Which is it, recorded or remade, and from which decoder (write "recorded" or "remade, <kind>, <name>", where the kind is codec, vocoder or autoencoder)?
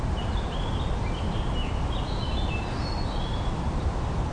recorded